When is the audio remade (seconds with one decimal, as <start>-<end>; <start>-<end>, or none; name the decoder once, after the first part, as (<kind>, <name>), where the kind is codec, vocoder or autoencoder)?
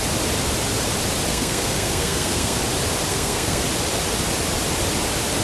1.3-2.6 (codec, SNAC); 3.1-3.6